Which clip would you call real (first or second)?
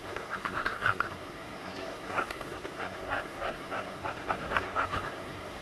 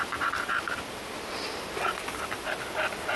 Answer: second